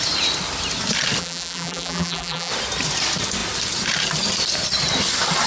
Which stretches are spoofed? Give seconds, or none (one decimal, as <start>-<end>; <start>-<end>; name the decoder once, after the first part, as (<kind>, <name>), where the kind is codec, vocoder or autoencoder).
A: 1.2-2.5 (vocoder, BigVGAN v2)